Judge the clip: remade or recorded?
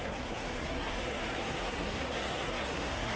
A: remade